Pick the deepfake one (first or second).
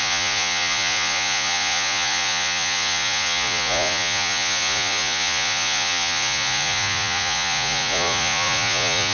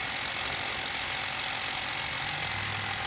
first